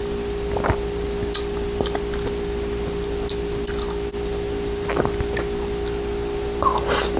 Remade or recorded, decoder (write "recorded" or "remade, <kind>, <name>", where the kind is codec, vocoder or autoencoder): recorded